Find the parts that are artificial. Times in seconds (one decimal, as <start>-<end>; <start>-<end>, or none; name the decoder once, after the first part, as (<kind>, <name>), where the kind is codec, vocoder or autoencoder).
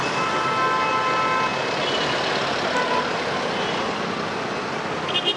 none